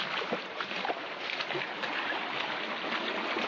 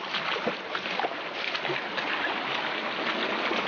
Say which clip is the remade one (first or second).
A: first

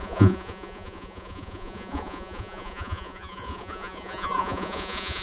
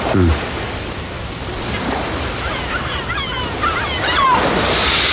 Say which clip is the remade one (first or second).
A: first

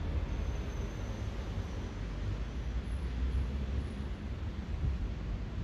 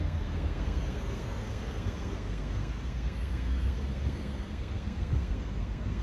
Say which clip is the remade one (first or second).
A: second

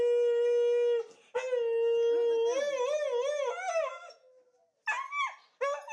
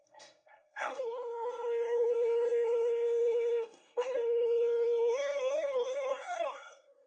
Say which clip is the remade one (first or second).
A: second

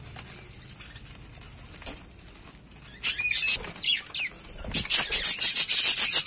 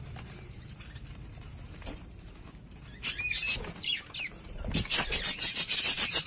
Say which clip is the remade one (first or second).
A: second